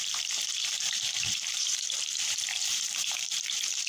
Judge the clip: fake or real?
fake